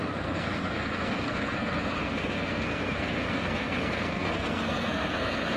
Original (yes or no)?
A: no